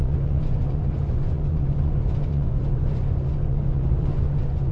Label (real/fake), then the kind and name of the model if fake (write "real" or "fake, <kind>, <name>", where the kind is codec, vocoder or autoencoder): fake, vocoder, Vocos